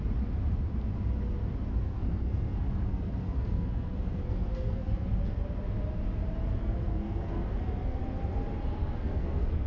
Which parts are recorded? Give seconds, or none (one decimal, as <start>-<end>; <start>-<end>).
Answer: 0.0-1.7; 5.1-6.6; 8.0-8.8